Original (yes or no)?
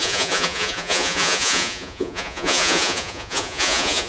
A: no